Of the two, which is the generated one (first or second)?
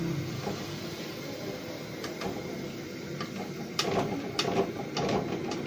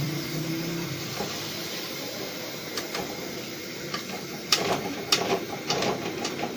second